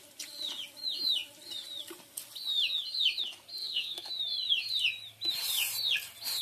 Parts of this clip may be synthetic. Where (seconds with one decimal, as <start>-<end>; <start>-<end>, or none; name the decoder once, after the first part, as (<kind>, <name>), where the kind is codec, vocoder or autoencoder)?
3.6-4.1 (codec, SNAC)

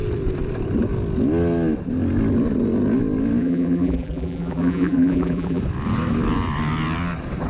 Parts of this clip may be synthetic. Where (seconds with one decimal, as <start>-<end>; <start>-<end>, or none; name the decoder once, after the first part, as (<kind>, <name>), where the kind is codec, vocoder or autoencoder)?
3.4-5.6 (vocoder, BigVGAN v2)

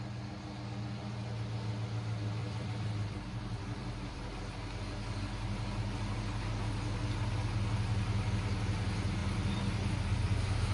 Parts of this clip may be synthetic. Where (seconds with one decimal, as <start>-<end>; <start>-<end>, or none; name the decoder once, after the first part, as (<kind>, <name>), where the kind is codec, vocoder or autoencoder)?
2.4-4.4 (vocoder, BigVGAN v2); 9.2-10.7

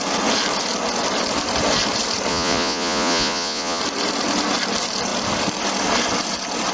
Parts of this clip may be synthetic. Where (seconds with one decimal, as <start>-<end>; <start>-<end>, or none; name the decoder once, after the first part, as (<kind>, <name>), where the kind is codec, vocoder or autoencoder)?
2.3-3.8 (vocoder, Vocos)

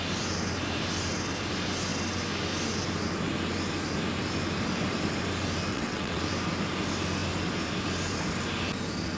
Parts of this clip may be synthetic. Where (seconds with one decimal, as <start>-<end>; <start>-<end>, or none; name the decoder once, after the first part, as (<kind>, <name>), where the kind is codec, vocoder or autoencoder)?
5.7-6.2 (vocoder, WaveNeXt)

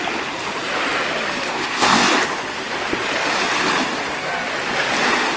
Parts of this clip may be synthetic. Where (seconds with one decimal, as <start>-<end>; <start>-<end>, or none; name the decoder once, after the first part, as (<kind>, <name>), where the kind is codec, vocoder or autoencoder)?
1.5-2.1 (codec, ZipCodec)

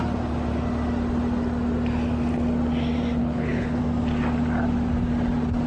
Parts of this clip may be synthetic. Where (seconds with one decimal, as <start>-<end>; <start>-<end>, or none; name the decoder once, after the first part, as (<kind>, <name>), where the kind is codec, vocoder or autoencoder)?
3.2-3.8 (codec, HILCodec)

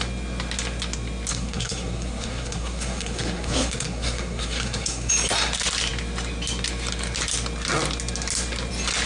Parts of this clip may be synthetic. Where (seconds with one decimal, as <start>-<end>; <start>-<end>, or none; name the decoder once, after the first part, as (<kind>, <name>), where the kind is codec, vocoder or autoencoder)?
1.3-5.1 (codec, SNAC)